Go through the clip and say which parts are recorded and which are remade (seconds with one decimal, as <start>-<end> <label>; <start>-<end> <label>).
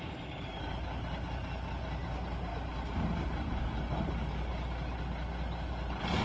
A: 0.0-6.2 recorded